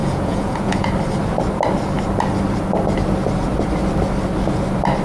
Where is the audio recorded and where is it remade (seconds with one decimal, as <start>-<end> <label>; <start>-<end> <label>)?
0.0-0.9 remade; 0.9-5.0 recorded